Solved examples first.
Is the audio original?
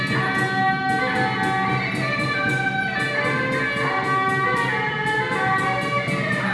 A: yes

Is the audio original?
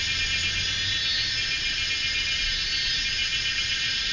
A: yes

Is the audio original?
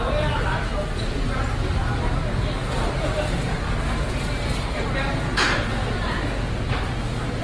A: yes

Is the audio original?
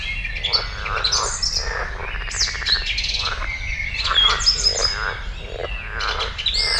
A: yes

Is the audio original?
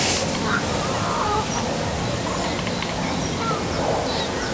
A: yes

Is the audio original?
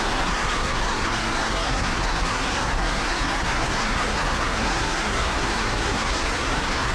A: no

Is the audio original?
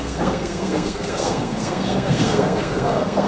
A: no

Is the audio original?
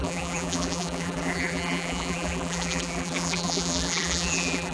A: no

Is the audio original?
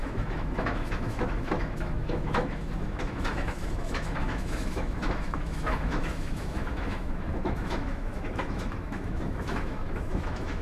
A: no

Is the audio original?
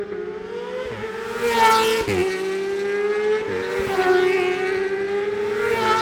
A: yes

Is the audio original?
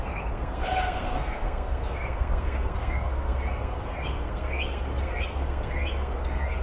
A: no